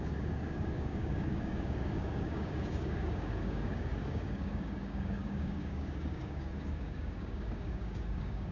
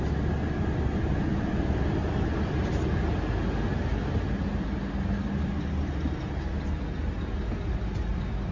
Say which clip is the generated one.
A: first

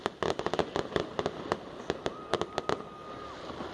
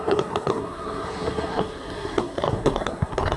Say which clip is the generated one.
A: second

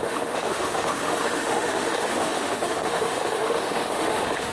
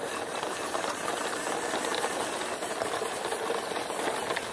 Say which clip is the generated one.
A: first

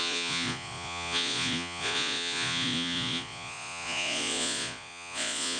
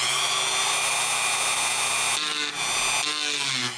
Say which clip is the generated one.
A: first